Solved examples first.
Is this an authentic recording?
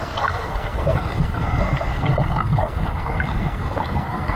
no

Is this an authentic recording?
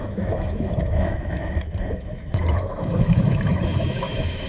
no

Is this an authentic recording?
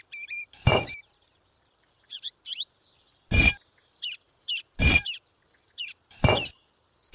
no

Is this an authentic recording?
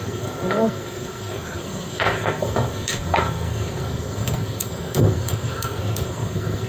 no